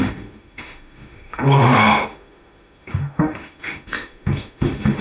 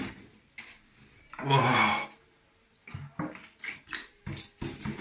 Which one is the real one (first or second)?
second